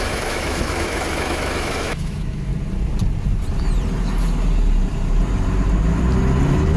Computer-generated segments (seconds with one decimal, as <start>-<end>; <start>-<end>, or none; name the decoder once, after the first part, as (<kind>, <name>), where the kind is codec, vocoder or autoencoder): 0.0-2.5 (autoencoder, DAC-VAE)